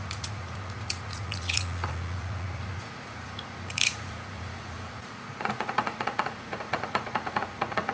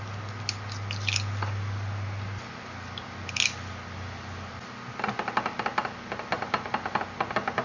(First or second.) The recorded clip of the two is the second